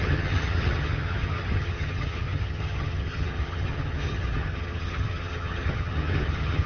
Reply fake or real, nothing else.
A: fake